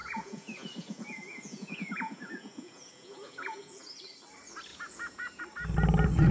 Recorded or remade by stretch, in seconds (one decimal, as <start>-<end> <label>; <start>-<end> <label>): 0.0-3.8 remade; 3.8-4.7 recorded; 4.7-5.4 remade; 5.4-6.3 recorded